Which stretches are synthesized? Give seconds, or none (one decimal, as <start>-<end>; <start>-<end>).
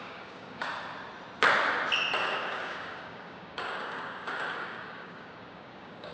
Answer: 0.0-0.7; 2.2-6.1